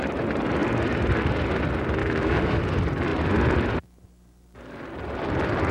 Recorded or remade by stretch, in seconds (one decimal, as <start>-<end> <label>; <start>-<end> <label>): 0.0-2.0 recorded; 2.0-2.6 remade; 2.6-5.7 recorded